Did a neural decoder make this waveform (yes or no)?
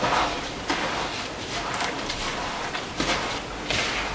no